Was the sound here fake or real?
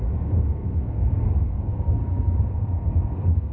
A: fake